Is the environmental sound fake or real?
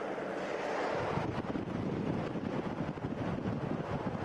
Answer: real